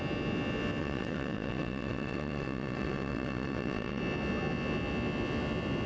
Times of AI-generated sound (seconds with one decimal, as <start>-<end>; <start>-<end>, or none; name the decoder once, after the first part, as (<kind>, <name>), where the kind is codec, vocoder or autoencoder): 0.8-4.0 (vocoder, WaveNeXt)